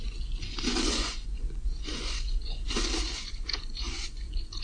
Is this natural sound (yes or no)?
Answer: no